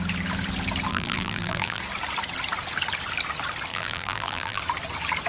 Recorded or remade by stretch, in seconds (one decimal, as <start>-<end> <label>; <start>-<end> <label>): 0.0-0.9 recorded; 0.9-1.8 remade; 1.8-3.7 recorded; 3.7-4.6 remade; 4.6-5.3 recorded